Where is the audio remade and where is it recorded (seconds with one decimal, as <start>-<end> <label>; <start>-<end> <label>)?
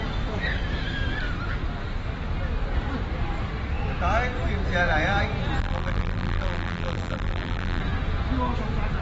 0.0-5.6 recorded; 5.6-7.8 remade; 7.8-9.0 recorded